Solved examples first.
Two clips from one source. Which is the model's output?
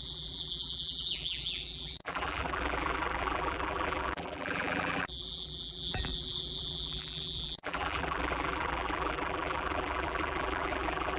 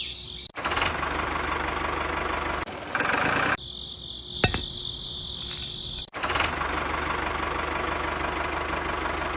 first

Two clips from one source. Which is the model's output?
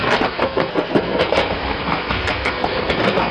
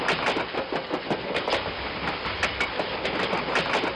first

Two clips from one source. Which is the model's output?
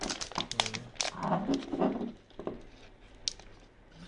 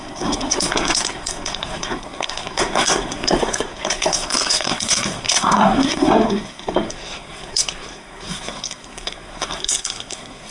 second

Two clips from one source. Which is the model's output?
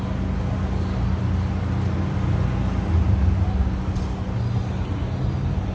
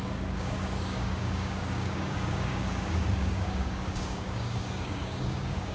second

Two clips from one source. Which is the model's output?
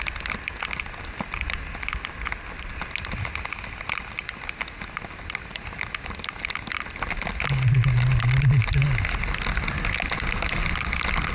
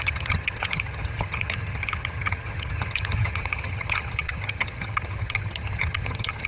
second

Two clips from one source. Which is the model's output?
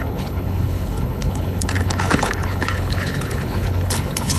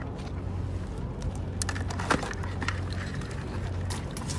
first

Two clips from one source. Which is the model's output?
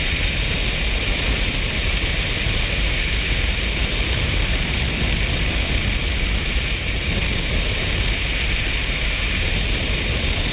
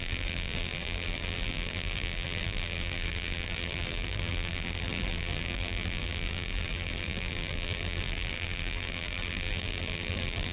second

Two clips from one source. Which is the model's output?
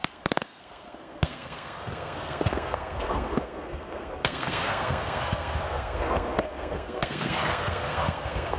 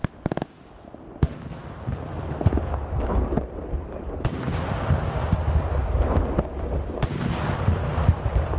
first